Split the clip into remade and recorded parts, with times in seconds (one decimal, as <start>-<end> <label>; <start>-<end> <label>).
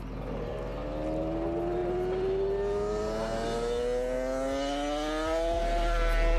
0.0-6.4 recorded